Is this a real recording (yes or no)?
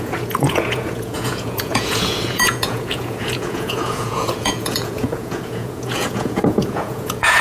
no